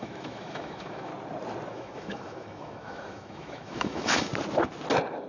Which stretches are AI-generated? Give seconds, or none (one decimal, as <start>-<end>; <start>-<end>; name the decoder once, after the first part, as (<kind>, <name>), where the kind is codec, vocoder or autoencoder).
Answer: 0.0-1.1 (autoencoder, DAC-VAE); 1.7-4.3